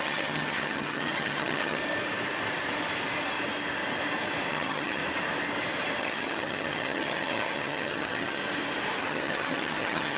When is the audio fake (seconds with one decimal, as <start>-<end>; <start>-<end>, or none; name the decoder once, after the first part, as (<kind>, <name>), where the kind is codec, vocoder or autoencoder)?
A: 0.0-1.8 (vocoder, HiFi-GAN); 4.5-5.0; 6.0-8.4; 9.0-10.2